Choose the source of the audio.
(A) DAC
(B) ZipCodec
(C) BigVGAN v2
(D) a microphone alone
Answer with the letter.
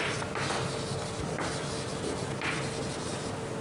D